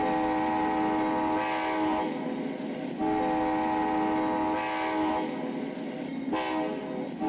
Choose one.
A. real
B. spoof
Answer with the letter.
A